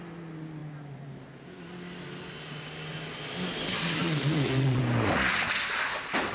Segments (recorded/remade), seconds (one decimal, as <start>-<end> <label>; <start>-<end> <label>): 0.0-4.0 recorded; 4.0-4.8 remade; 4.8-6.3 recorded